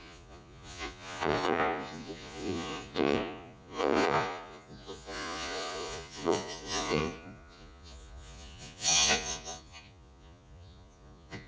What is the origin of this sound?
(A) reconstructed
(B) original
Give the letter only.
A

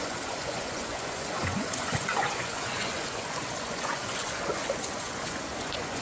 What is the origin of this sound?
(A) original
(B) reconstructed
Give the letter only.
B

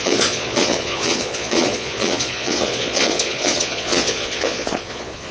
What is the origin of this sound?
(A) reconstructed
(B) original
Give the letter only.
A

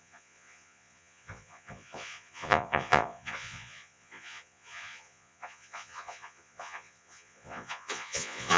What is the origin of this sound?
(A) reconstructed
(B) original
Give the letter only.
A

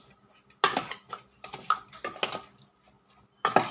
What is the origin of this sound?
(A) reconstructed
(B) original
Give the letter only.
B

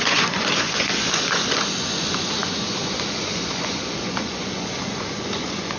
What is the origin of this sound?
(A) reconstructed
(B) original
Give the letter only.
A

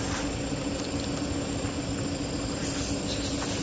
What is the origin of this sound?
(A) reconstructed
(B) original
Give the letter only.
B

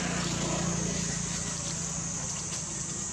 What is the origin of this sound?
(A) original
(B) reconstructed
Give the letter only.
A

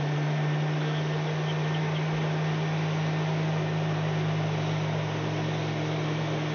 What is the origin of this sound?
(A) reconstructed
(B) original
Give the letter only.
B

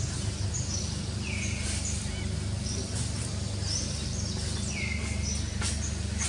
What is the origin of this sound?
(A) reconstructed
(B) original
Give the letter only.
B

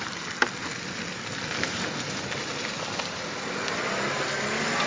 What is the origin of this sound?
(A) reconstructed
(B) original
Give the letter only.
B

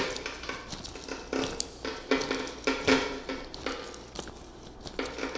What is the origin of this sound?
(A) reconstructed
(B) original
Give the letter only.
B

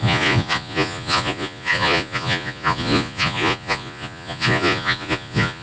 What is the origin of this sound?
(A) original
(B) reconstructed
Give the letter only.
B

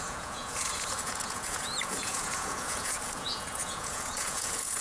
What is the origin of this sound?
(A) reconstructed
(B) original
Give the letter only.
A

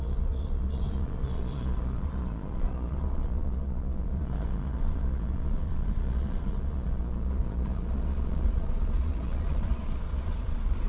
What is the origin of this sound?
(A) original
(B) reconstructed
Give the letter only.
B